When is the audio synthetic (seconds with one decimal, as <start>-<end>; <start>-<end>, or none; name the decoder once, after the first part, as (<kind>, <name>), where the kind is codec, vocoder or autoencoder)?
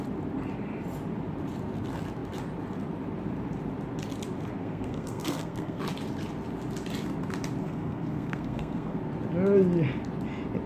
4.6-5.8 (codec, SNAC); 7.6-9.0